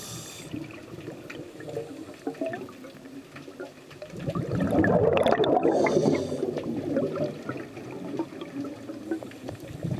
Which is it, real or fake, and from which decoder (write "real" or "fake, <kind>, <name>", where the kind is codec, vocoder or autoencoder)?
real